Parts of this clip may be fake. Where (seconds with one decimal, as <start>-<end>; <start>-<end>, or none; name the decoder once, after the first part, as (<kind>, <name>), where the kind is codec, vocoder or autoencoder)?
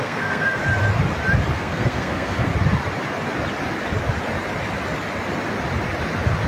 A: 0.0-0.6 (codec, SNAC); 1.5-2.5